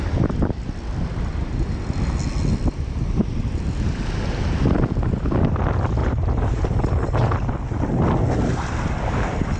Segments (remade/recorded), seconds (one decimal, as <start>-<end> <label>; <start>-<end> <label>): 0.0-6.0 recorded; 6.0-7.5 remade; 7.5-9.6 recorded